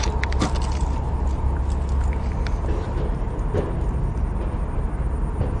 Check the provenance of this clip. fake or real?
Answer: real